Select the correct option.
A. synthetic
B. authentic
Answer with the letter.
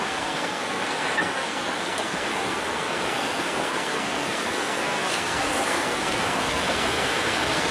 A